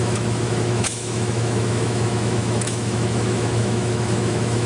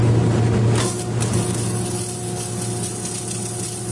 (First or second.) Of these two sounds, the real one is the second